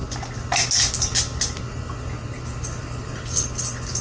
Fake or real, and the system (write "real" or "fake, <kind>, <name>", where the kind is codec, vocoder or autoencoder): real